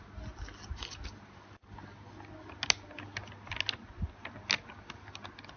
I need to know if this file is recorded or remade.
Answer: recorded